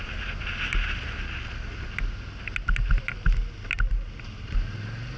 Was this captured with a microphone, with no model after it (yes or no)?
yes